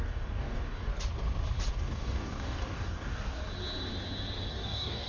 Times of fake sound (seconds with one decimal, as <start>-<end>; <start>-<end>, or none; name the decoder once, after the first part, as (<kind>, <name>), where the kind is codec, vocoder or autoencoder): 0.0-0.9 (codec, DAC); 1.7-3.4; 4.5-5.1